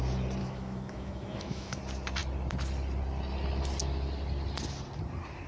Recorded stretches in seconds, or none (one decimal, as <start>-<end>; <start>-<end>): 0.0-0.4; 1.8-5.5